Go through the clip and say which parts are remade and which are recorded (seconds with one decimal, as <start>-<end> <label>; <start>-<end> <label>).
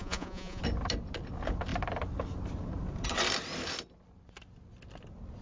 0.0-0.6 remade; 0.6-5.4 recorded